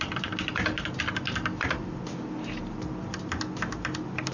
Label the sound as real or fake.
real